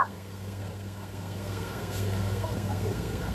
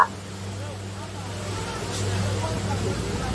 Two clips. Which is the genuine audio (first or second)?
second